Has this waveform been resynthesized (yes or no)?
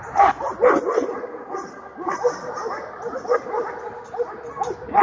no